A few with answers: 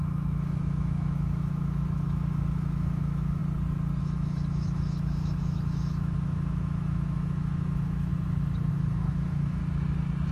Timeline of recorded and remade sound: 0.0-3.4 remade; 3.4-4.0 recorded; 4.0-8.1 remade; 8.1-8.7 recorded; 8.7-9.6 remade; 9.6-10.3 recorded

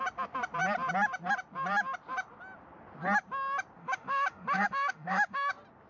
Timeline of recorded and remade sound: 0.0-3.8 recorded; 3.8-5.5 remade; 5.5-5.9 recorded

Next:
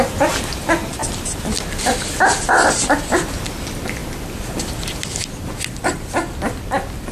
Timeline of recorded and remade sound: 0.0-7.1 recorded